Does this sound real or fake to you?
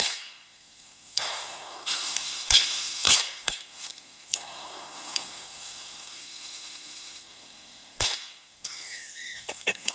fake